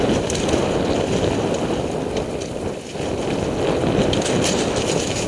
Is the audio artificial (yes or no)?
no